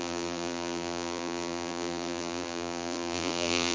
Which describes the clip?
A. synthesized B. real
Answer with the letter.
A